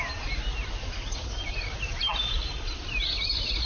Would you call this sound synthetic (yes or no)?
no